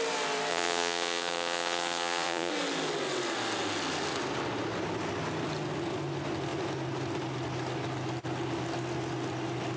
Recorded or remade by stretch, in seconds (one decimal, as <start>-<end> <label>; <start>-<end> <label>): 0.0-0.5 recorded; 0.5-2.5 remade; 2.5-9.8 recorded